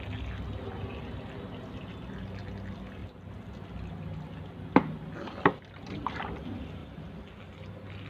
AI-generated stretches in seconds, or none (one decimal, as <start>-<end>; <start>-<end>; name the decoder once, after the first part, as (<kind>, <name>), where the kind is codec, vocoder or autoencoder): 6.8-8.1 (vocoder, BigVGAN v2)